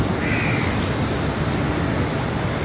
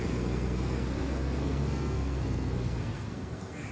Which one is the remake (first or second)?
second